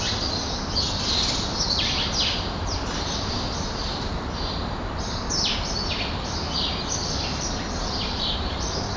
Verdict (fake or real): real